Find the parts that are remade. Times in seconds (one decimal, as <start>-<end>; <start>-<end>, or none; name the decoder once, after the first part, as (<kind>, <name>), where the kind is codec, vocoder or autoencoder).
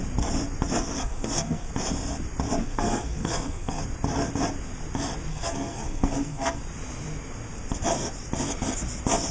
1.0-1.7 (codec, SNAC); 2.6-3.8; 5.3-6.6